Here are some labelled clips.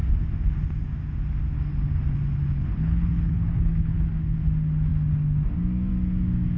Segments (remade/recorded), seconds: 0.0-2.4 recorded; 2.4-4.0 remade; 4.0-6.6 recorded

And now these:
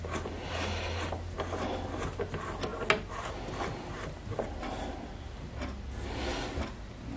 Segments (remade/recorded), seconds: 0.0-7.2 recorded

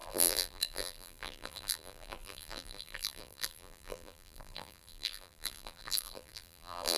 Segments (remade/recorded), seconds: 0.0-7.0 remade